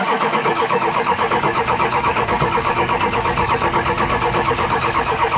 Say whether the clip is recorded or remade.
remade